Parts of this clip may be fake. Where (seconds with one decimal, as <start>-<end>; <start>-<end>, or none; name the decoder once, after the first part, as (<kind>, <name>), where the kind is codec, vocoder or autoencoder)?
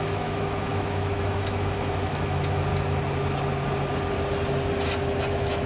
0.0-2.7 (autoencoder, DAC-VAE); 5.3-5.7